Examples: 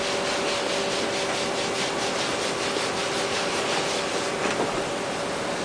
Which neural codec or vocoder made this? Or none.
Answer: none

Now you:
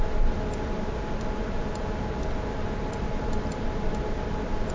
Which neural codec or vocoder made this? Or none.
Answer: none